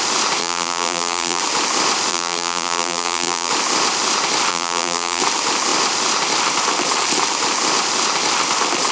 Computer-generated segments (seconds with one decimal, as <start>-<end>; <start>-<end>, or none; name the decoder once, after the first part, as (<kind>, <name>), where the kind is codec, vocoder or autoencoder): 0.4-1.4 (vocoder, BigVGAN v2); 2.1-3.5; 4.5-5.2